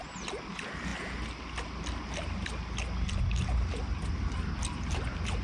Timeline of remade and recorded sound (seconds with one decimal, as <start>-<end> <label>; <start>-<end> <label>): 0.0-5.4 recorded